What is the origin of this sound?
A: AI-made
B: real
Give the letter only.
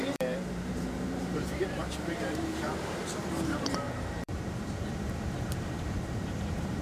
A